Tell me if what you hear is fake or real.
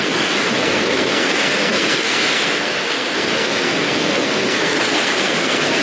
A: fake